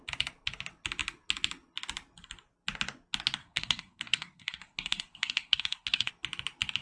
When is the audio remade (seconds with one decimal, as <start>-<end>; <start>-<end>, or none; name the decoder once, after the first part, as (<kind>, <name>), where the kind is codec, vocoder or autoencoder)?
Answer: 3.4-6.1 (codec, SNAC)

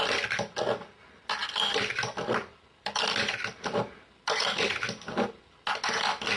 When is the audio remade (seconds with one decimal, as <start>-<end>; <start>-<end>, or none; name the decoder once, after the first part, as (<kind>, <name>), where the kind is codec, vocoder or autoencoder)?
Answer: none